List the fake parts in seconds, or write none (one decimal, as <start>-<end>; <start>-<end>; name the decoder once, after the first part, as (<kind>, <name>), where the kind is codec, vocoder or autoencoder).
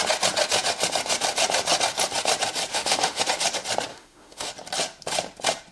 2.7-3.2 (autoencoder, DAC-VAE); 3.9-4.5